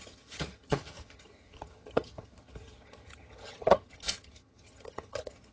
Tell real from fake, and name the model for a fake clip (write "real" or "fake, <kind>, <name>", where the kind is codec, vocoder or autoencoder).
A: fake, vocoder, HiFi-GAN